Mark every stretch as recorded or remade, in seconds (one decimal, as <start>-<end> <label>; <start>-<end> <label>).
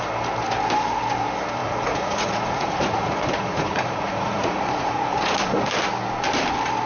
0.0-1.6 recorded; 1.6-5.7 remade; 5.7-6.9 recorded